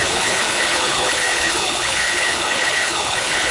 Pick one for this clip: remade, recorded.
remade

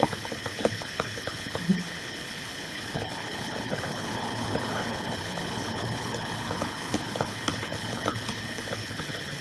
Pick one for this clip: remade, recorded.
remade